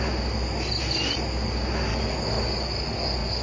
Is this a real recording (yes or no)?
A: yes